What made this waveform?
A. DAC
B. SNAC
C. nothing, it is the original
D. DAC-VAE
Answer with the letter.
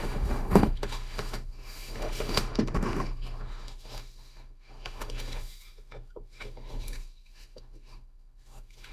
D